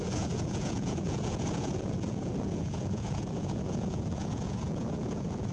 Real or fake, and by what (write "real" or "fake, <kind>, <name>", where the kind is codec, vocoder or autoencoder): fake, vocoder, Vocos